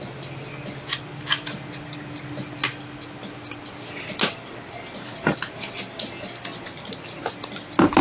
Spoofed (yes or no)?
no